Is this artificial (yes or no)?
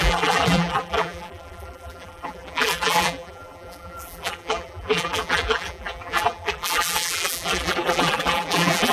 yes